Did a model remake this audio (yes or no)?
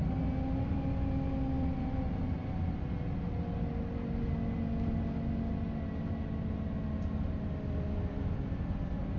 no